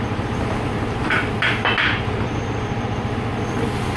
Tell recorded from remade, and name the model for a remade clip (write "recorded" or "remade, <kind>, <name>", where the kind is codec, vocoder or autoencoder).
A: recorded